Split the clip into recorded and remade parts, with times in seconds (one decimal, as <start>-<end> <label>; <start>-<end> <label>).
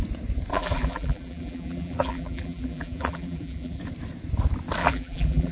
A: 0.0-0.5 recorded; 0.5-3.8 remade; 3.8-4.8 recorded; 4.8-5.5 remade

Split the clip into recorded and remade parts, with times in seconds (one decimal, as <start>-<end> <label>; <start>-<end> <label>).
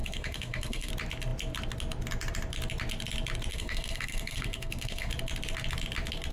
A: 0.0-0.9 remade; 0.9-3.5 recorded; 3.5-5.1 remade; 5.1-6.3 recorded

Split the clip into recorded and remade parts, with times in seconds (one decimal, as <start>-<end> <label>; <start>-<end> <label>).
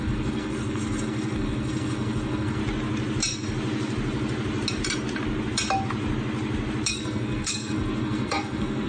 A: 0.0-2.6 remade; 2.6-6.9 recorded; 6.9-8.9 remade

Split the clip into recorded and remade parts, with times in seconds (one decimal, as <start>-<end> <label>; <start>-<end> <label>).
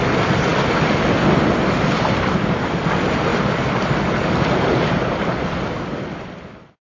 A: 0.0-6.9 recorded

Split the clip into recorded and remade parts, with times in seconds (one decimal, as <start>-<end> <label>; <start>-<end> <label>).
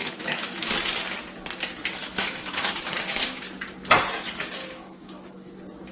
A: 0.0-0.7 remade; 0.7-2.0 recorded; 2.0-3.4 remade; 3.4-4.6 recorded; 4.6-5.5 remade; 5.5-5.9 recorded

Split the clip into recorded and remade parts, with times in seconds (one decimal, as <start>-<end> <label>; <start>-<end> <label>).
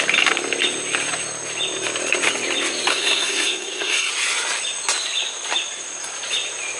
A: 0.0-2.9 recorded; 2.9-4.1 remade; 4.1-6.8 recorded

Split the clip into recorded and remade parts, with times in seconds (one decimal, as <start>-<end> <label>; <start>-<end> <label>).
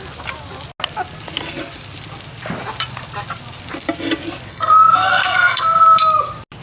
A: 0.0-4.5 recorded; 4.5-6.0 remade; 6.0-6.6 recorded